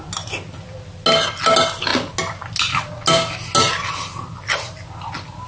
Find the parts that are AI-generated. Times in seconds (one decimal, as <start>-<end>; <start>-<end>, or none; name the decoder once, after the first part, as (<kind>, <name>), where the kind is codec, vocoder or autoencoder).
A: none